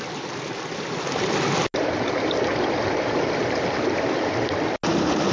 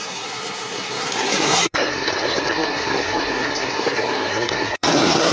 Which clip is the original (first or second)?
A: first